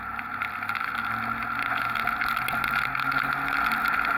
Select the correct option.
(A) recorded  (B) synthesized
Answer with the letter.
A